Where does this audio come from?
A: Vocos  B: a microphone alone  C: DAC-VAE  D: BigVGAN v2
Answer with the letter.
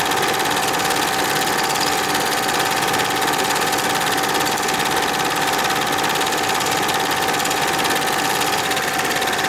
B